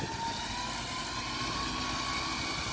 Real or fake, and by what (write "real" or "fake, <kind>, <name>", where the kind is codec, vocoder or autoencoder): real